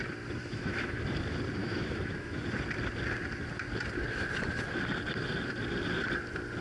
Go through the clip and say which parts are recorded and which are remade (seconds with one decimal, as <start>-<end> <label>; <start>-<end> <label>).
0.0-0.4 recorded; 0.4-1.0 remade; 1.0-1.6 recorded; 1.6-2.4 remade; 2.4-6.6 recorded